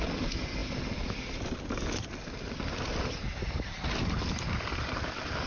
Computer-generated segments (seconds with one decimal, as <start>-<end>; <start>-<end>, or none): none